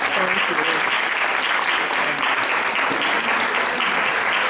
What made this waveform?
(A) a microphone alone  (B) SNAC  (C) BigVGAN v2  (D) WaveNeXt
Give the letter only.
A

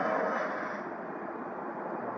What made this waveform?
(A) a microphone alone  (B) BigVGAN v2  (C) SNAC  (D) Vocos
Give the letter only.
A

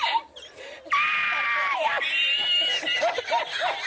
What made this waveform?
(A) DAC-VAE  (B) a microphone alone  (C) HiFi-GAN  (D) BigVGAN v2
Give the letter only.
B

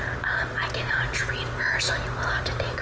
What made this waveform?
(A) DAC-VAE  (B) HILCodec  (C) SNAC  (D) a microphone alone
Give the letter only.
D